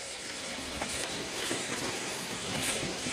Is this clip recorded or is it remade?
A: remade